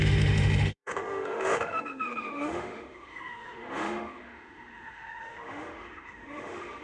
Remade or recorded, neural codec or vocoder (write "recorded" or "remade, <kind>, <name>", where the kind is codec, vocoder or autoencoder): remade, autoencoder, DAC-VAE